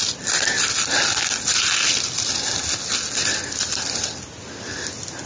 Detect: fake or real real